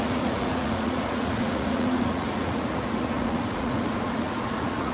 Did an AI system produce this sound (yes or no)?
yes